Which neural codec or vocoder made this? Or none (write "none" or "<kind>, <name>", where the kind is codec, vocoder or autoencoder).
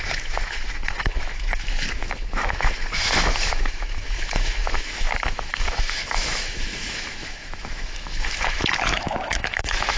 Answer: autoencoder, DAC-VAE